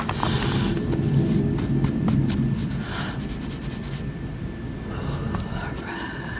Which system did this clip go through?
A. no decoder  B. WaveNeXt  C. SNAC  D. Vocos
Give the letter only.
A